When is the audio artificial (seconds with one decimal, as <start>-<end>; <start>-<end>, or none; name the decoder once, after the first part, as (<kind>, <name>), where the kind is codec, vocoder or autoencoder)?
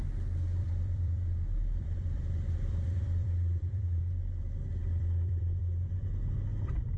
0.6-4.0 (vocoder, BigVGAN v2); 4.8-5.6; 6.5-7.0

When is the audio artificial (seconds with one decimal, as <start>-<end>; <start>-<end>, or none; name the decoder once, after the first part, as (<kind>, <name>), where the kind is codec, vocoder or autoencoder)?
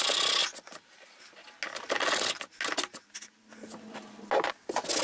none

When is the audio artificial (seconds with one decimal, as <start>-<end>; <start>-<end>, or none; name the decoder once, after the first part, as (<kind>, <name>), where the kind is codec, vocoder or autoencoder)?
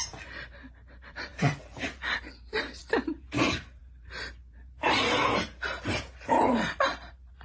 0.0-7.4 (vocoder, BigVGAN v2)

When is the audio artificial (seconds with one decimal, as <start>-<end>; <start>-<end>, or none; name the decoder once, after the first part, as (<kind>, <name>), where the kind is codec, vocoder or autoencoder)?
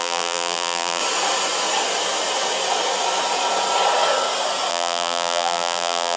0.0-1.0 (vocoder, BigVGAN v2); 4.7-6.2